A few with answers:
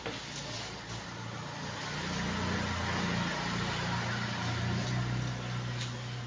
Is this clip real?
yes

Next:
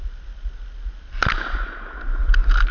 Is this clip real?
yes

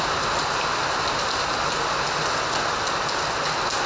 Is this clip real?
yes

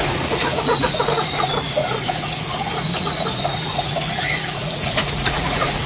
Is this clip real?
no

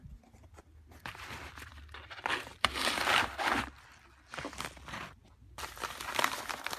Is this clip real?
yes